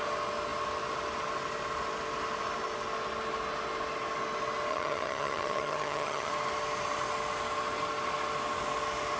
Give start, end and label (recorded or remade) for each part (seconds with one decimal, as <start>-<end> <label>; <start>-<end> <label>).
0.0-4.7 recorded; 4.7-6.3 remade; 6.3-9.2 recorded